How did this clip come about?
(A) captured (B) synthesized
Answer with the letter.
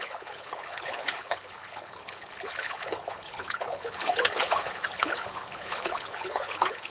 B